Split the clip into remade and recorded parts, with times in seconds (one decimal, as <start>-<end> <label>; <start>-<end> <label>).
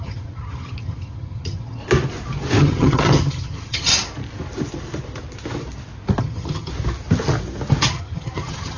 0.0-1.8 remade; 1.8-2.6 recorded; 2.6-3.9 remade; 3.9-6.2 recorded; 6.2-6.7 remade; 6.7-7.9 recorded; 7.9-8.8 remade